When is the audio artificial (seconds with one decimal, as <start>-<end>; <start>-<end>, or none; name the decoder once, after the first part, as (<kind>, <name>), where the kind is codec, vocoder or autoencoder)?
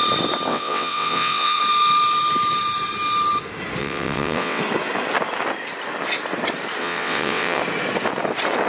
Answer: 0.5-1.6 (vocoder, WaveNeXt); 3.8-4.6; 6.8-7.6